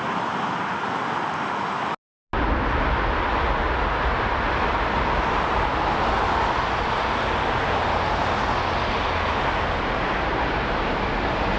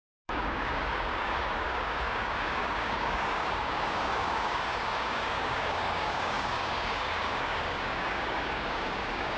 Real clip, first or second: first